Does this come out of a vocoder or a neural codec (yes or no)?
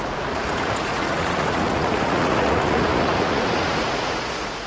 yes